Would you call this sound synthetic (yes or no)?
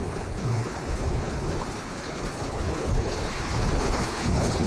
yes